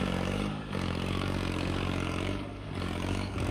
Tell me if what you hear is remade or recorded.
remade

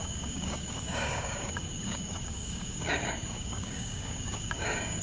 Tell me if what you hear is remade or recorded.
remade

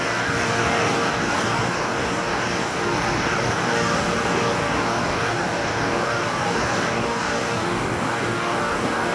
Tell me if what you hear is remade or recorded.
remade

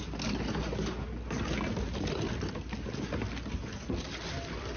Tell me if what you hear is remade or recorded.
recorded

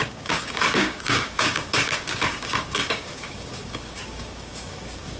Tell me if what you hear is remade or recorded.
remade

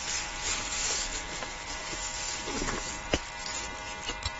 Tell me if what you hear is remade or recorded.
recorded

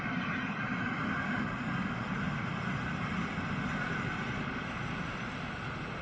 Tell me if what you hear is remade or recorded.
recorded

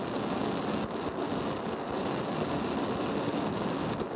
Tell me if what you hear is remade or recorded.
recorded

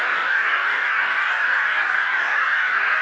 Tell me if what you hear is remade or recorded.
remade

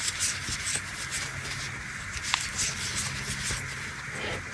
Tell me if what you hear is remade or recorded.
recorded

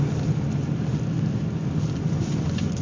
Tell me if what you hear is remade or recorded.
recorded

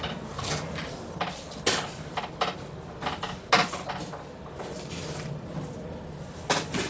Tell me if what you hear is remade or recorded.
recorded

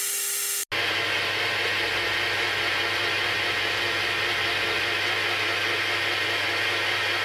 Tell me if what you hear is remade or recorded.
recorded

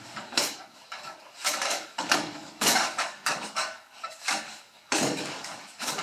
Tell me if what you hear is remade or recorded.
remade